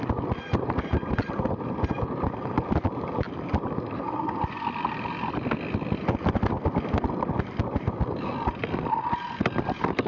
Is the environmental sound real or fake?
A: real